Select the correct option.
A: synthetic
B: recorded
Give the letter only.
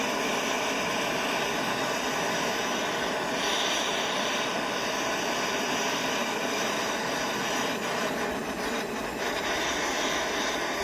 B